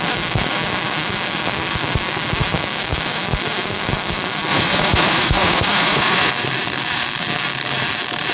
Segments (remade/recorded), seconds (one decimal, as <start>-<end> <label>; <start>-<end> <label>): 0.0-4.5 recorded; 4.5-6.3 remade; 6.3-8.3 recorded